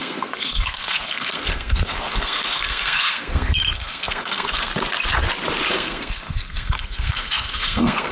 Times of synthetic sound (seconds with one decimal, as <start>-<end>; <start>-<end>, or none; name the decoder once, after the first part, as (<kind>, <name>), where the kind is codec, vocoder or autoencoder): 0.0-4.7 (codec, SNAC); 5.7-8.1